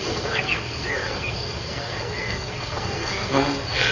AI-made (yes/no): yes